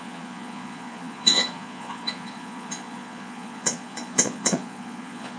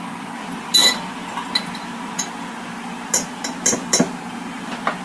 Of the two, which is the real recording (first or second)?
second